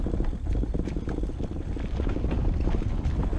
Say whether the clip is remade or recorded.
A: recorded